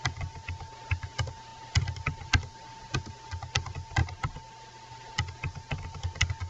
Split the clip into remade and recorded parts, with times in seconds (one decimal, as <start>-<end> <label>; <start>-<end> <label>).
0.0-6.5 recorded